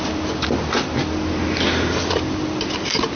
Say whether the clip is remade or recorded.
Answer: recorded